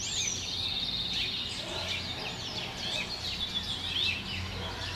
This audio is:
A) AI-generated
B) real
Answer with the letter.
B